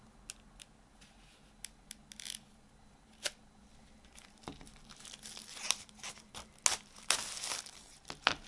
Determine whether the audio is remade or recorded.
recorded